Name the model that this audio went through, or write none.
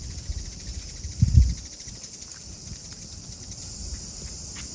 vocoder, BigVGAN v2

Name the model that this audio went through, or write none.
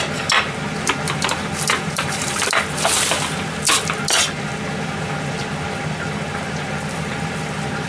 vocoder, BigVGAN v2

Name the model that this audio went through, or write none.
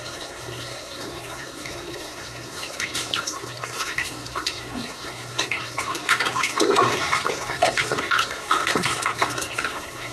codec, SNAC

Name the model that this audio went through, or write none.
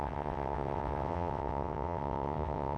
vocoder, WaveNeXt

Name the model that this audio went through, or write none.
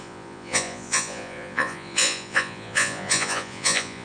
vocoder, Vocos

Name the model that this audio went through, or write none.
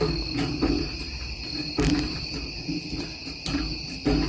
none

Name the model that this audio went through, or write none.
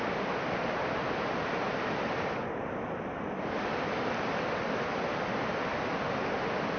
none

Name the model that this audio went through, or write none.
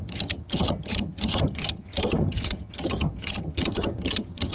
vocoder, HiFi-GAN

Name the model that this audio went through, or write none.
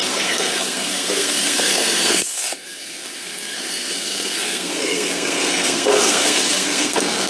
codec, SNAC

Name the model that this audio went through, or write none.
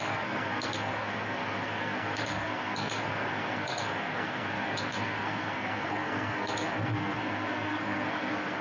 codec, SNAC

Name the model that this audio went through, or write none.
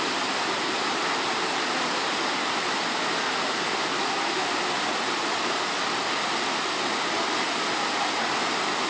none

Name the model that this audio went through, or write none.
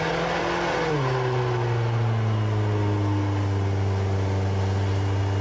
none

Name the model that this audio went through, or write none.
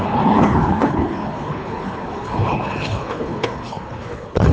codec, HILCodec